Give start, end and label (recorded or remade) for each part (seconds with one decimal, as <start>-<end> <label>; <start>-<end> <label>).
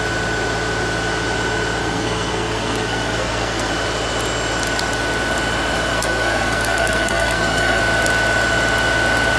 0.0-1.8 recorded; 1.8-3.7 remade; 3.7-5.9 recorded; 5.9-7.8 remade; 7.8-9.4 recorded